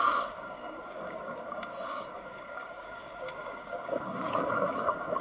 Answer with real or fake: fake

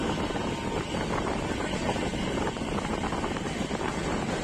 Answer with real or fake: real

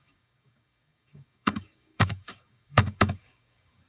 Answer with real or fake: fake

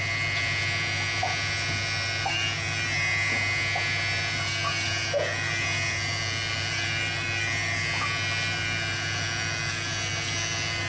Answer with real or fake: real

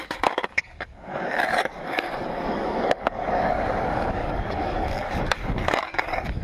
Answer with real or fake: fake